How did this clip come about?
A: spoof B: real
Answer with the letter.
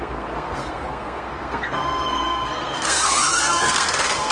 A